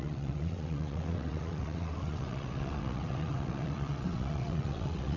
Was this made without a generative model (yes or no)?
no